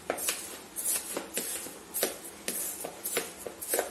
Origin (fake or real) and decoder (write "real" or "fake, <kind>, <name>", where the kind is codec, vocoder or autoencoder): real